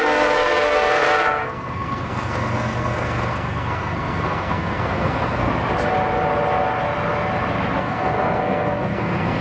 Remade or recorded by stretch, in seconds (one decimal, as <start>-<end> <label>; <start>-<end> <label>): 0.0-5.5 remade; 5.5-7.8 recorded; 7.8-9.4 remade